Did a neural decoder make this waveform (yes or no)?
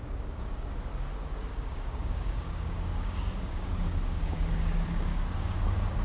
yes